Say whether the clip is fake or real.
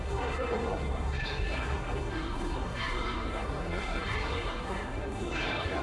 fake